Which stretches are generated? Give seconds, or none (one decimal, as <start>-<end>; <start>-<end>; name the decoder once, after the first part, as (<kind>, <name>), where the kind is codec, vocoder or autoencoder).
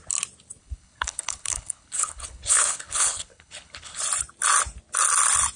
0.6-4.0 (codec, HILCodec)